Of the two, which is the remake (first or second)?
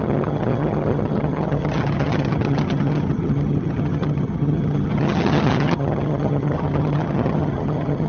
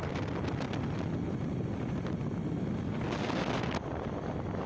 first